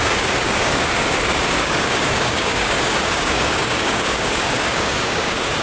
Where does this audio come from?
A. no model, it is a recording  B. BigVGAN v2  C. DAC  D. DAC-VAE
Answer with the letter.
C